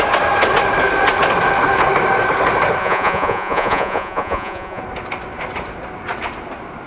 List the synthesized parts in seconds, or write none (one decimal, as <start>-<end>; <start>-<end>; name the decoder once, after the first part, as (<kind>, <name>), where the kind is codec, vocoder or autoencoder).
2.8-4.8 (vocoder, Vocos)